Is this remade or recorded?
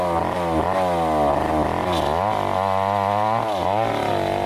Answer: recorded